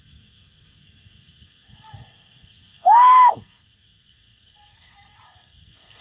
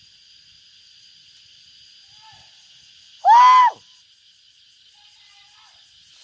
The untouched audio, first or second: second